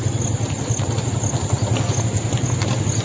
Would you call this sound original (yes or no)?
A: yes